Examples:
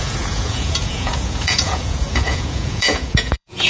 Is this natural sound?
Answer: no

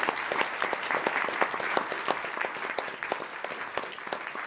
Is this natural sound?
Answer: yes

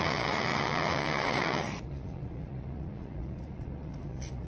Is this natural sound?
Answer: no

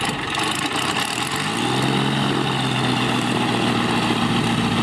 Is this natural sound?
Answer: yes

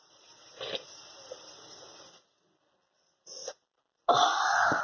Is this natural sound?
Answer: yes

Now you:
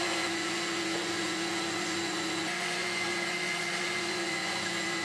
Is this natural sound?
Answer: no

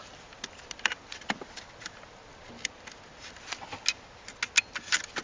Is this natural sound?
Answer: yes